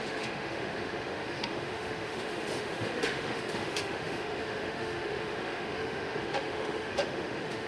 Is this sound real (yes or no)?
no